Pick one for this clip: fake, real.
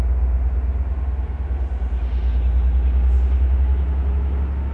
real